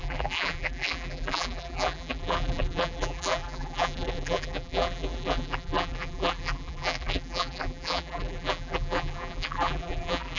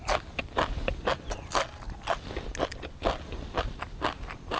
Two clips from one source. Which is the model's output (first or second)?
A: first